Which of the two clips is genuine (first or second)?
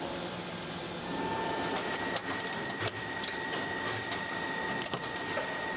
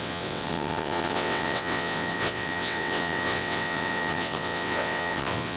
first